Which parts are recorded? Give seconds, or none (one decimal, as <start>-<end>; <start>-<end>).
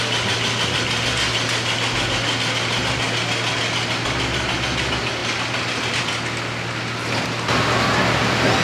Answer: 0.0-8.6